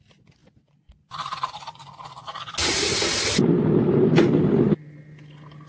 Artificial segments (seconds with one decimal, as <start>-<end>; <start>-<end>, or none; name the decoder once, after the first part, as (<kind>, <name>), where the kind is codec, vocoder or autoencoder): none